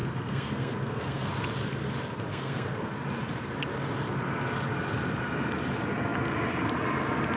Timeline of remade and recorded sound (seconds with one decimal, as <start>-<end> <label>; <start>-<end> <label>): 0.0-1.3 remade; 1.3-2.3 recorded; 2.3-2.9 remade; 2.9-7.4 recorded